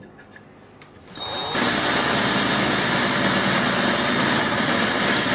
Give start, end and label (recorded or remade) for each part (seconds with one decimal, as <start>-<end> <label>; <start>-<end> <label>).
0.0-5.3 recorded